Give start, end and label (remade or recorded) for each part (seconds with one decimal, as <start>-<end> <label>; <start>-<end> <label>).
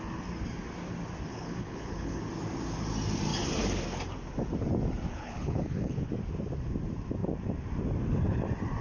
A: 0.0-1.3 recorded; 1.3-2.2 remade; 2.2-5.1 recorded; 5.1-6.1 remade; 6.1-8.8 recorded